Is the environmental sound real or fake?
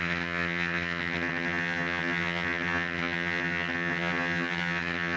fake